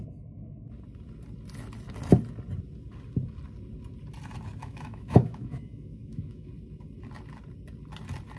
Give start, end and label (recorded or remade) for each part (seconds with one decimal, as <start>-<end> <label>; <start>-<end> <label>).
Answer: 0.0-4.6 recorded; 4.6-6.5 remade; 6.5-8.4 recorded